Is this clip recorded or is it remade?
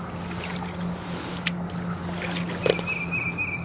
recorded